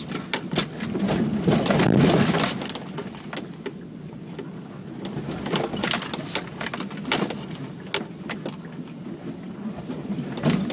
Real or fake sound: real